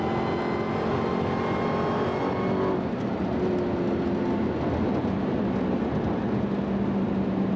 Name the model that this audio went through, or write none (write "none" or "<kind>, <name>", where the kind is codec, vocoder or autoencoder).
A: none